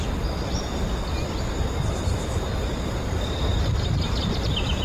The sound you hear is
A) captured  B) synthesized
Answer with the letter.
A